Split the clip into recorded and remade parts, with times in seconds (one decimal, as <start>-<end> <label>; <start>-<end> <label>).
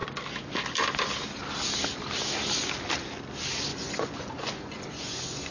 0.0-3.7 recorded; 3.7-5.5 remade